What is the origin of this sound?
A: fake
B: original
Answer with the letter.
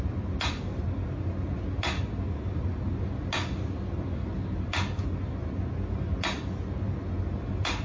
B